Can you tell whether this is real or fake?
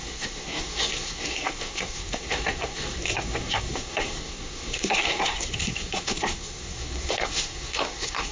fake